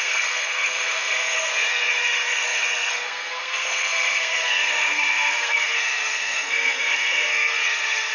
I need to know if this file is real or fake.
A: fake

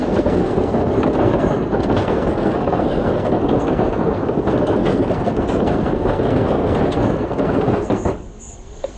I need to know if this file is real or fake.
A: fake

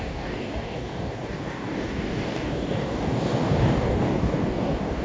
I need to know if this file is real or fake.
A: fake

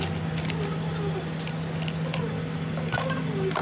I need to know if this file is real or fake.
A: real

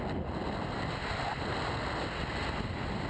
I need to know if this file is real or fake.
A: real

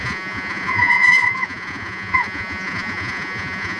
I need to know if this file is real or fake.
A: fake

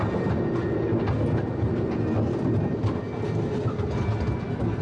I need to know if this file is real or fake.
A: real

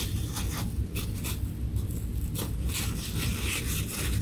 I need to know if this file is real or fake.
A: real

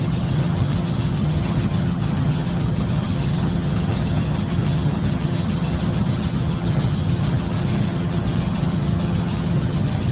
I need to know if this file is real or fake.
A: fake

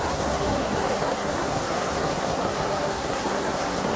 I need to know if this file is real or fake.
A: fake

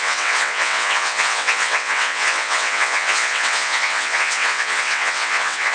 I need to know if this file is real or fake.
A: fake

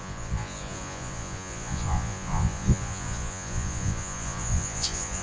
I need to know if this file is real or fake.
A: fake